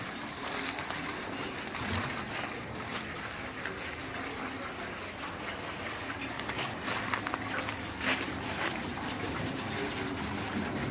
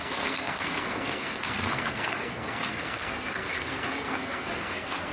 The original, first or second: first